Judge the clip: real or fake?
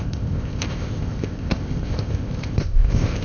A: fake